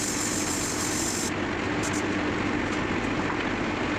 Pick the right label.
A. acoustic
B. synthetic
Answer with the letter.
A